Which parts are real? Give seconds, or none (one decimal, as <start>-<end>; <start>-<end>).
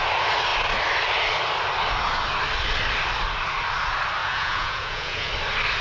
0.0-4.2; 5.3-5.8